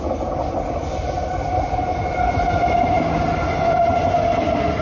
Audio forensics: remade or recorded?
recorded